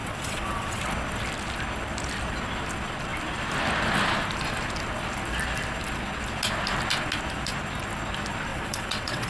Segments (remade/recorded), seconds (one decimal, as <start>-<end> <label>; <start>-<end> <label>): 0.0-0.8 remade; 0.8-8.5 recorded; 8.5-9.3 remade